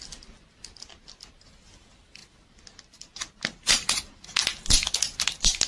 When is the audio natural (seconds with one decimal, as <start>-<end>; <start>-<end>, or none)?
0.0-5.7